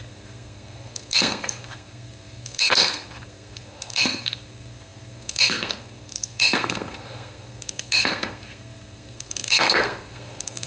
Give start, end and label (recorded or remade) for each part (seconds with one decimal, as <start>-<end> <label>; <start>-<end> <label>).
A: 0.0-10.7 remade